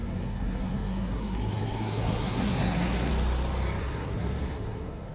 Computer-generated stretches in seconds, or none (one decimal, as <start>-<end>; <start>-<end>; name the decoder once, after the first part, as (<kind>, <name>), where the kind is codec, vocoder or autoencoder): 0.0-3.1 (codec, SNAC); 3.8-5.1